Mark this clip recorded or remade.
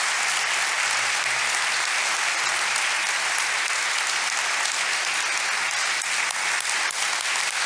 recorded